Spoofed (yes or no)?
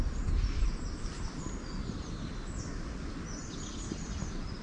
no